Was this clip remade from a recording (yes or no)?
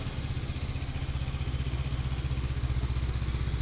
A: no